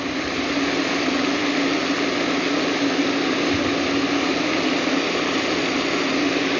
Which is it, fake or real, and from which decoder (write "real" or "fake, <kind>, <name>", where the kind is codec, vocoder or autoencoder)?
real